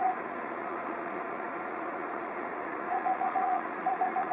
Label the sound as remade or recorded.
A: remade